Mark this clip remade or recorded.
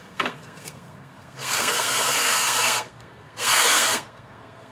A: remade